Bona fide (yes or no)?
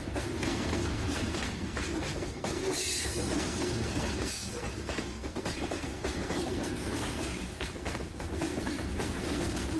no